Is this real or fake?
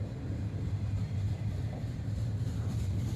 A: fake